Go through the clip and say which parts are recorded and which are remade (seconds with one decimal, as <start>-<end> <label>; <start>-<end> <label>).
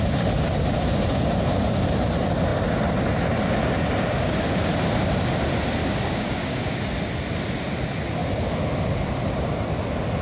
0.0-5.8 recorded; 5.8-6.8 remade; 6.8-10.2 recorded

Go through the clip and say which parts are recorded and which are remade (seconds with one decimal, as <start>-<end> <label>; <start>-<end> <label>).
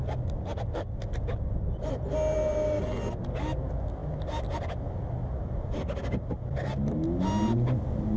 0.0-8.2 recorded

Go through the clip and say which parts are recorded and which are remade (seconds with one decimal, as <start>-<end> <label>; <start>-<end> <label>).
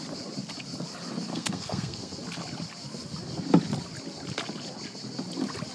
0.0-1.3 recorded; 1.3-2.2 remade; 2.2-5.7 recorded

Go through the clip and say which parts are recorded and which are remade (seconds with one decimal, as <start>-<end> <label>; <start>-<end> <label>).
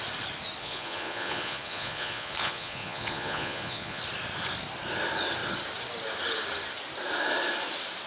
0.0-0.6 recorded; 0.6-4.0 remade; 4.0-8.1 recorded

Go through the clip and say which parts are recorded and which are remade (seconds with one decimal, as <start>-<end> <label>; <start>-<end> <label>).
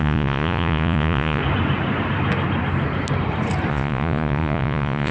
0.0-1.4 remade; 1.4-3.7 recorded; 3.7-5.1 remade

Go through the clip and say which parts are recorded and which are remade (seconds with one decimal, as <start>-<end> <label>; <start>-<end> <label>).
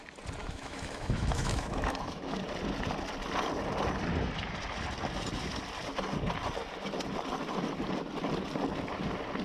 0.0-0.4 recorded; 0.4-2.4 remade; 2.4-9.4 recorded